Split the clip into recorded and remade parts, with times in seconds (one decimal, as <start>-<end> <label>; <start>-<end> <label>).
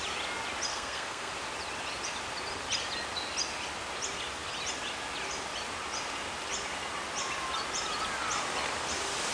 0.0-0.7 recorded; 0.7-1.3 remade; 1.3-9.3 recorded